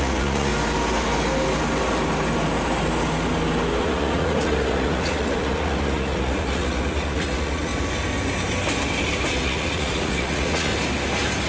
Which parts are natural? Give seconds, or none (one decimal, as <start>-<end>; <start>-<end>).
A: 0.5-3.8; 7.7-9.3; 10.7-11.5